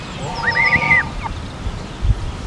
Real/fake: real